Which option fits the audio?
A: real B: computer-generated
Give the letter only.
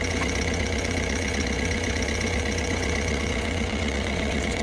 B